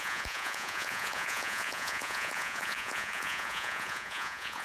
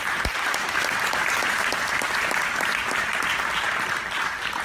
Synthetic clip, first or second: first